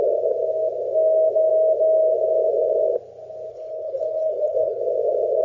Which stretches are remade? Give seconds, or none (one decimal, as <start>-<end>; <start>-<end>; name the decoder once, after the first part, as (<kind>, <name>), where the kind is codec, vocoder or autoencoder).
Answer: 3.5-4.8 (codec, HILCodec)